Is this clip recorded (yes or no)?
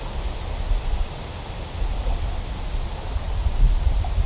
yes